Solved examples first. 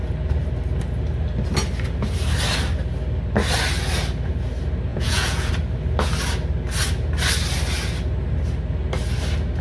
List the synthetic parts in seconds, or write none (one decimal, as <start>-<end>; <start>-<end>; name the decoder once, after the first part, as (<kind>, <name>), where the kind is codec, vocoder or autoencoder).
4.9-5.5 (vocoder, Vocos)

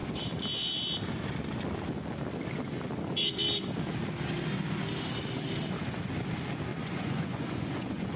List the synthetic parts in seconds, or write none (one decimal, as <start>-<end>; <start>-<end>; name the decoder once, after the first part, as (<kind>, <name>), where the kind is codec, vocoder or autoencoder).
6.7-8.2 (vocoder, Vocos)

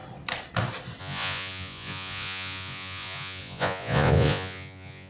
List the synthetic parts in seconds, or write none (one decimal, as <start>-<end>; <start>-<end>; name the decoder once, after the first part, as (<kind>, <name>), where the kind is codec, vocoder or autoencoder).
1.0-5.1 (vocoder, Vocos)

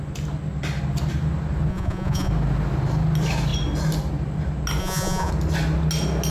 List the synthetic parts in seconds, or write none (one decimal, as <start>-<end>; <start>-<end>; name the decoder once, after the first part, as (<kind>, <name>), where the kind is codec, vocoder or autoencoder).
1.7-2.3 (vocoder, Vocos); 4.8-5.3

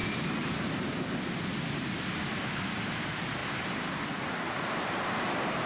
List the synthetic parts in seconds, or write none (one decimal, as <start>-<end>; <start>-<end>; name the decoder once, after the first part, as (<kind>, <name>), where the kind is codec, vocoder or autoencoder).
none

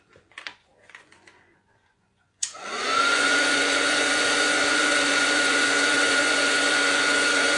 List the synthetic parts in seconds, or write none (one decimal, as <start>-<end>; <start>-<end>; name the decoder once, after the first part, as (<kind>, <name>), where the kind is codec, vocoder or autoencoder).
0.0-7.6 (vocoder, Vocos)